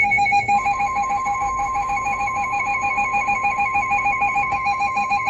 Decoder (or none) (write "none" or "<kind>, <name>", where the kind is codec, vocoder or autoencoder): autoencoder, DAC-VAE